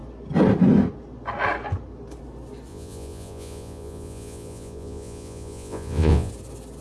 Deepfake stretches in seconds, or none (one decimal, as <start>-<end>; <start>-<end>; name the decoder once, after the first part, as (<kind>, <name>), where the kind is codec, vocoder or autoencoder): 2.7-6.3 (vocoder, Vocos)